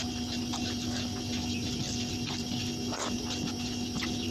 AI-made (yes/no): no